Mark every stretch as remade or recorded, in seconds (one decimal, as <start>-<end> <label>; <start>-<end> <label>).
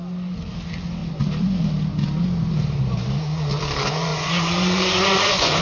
0.0-4.1 recorded; 4.1-5.6 remade